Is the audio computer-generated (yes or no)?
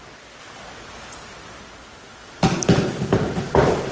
no